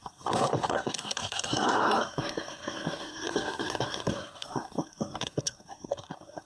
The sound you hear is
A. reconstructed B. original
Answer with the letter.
A